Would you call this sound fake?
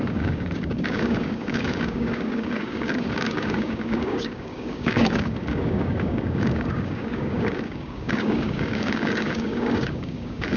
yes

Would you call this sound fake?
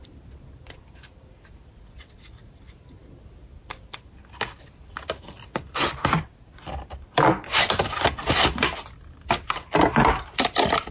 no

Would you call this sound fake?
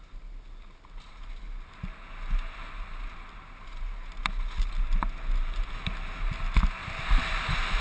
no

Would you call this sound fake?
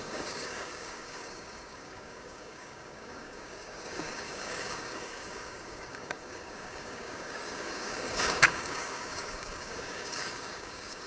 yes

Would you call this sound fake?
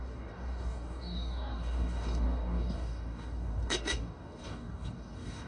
yes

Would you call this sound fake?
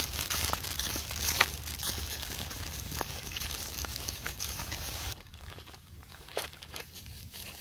yes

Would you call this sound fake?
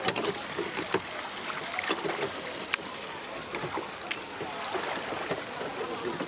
no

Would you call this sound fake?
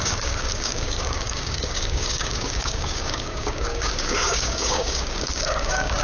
yes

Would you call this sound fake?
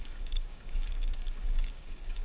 yes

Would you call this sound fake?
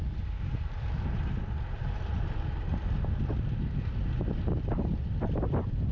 no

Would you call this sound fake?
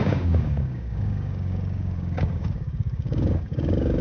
yes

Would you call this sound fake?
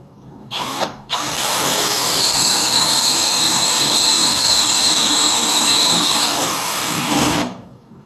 yes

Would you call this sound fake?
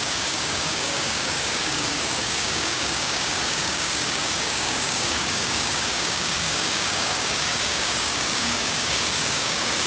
yes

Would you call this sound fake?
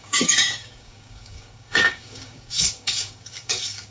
yes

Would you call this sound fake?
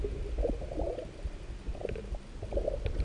no